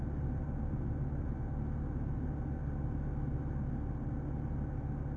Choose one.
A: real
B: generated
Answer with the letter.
A